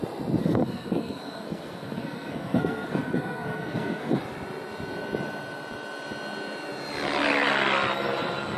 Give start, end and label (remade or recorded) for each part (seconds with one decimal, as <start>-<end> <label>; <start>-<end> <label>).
0.0-0.4 recorded; 0.4-4.2 remade; 4.2-8.6 recorded